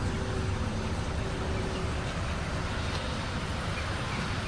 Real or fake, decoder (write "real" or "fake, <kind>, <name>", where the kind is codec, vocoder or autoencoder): real